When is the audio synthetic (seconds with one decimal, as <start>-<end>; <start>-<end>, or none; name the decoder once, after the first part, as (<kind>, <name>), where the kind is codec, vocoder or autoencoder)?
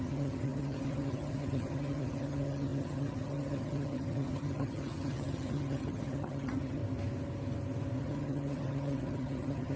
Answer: 0.0-6.8 (vocoder, HiFi-GAN); 8.0-9.8